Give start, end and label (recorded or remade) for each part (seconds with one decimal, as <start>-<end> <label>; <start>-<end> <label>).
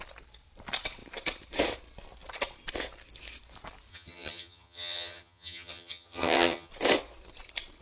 0.0-3.9 recorded; 3.9-6.7 remade; 6.7-7.8 recorded